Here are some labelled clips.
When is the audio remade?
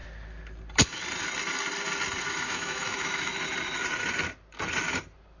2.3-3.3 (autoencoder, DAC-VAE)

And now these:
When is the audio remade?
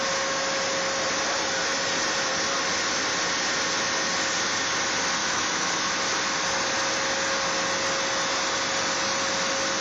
5.2-5.8 (autoencoder, DAC-VAE)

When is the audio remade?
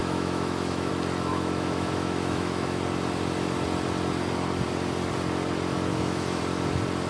0.0-0.9 (autoencoder, DAC-VAE); 1.3-2.8; 5.9-6.4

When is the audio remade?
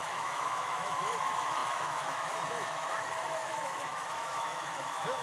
0.0-5.2 (autoencoder, DAC-VAE)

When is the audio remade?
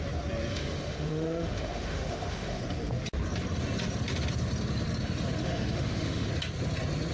0.5-2.6 (autoencoder, DAC-VAE); 5.4-6.3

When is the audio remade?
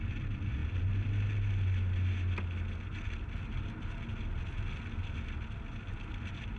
none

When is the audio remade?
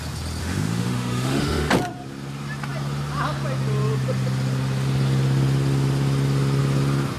0.4-1.7 (autoencoder, DAC-VAE)